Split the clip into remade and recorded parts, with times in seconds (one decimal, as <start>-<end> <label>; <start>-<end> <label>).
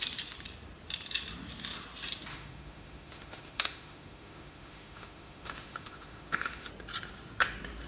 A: 0.0-2.3 recorded; 2.3-6.7 remade; 6.7-7.9 recorded